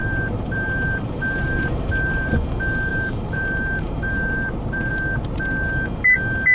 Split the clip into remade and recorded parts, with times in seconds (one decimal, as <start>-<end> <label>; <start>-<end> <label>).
0.0-2.3 remade; 2.3-2.9 recorded; 2.9-4.9 remade; 4.9-6.5 recorded